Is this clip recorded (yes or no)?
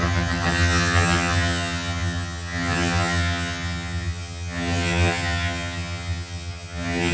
no